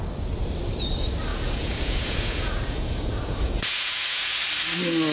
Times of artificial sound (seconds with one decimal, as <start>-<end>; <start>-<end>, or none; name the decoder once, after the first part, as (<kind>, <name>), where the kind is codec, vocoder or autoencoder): 1.3-4.4 (vocoder, Vocos)